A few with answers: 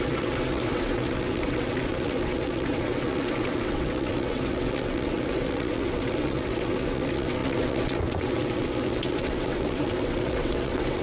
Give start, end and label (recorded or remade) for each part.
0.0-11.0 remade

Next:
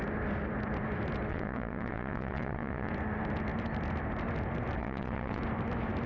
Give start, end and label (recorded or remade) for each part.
0.0-1.3 recorded; 1.3-2.9 remade; 2.9-4.8 recorded; 4.8-5.4 remade; 5.4-6.1 recorded

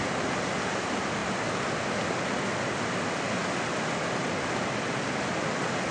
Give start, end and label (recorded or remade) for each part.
0.0-5.9 recorded

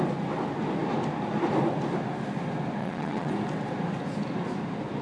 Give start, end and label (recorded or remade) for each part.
0.0-2.8 recorded; 2.8-3.3 remade; 3.3-5.0 recorded

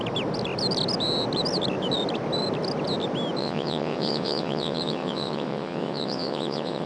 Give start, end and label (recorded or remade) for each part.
0.0-3.4 recorded; 3.4-6.9 remade

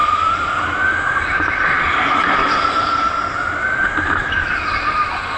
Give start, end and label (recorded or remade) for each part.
0.0-5.4 recorded